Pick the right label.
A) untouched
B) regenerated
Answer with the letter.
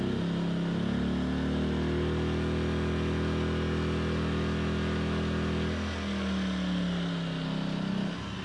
A